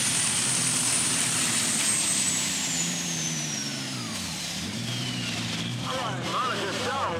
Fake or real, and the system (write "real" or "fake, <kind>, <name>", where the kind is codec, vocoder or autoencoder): fake, vocoder, BigVGAN v2